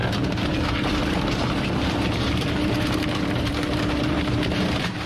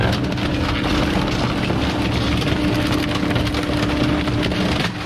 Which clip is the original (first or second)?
second